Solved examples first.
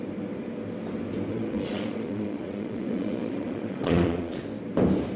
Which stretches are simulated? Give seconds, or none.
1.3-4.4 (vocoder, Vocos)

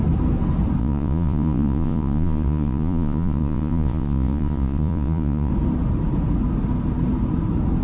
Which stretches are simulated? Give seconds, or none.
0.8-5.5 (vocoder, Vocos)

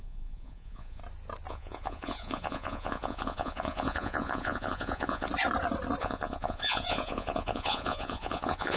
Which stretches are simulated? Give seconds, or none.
0.0-1.0 (vocoder, Vocos); 1.5-5.3; 6.0-8.8

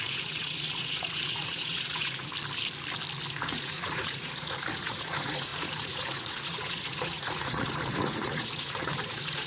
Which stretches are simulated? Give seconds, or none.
0.0-2.3 (vocoder, Vocos); 3.3-9.5

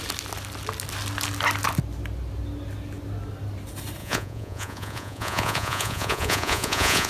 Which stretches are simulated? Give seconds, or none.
4.0-7.1 (vocoder, Vocos)

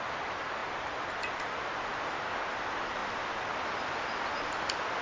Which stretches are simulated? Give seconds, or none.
none

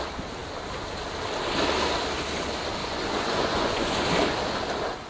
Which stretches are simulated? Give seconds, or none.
2.8-4.1 (vocoder, Vocos)

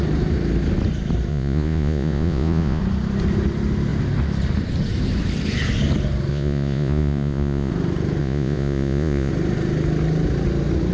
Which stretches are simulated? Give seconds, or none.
1.3-2.8 (vocoder, Vocos); 6.3-7.7; 8.2-9.3